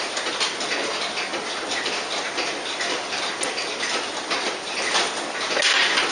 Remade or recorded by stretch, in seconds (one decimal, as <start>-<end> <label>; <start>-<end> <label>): 0.0-6.1 recorded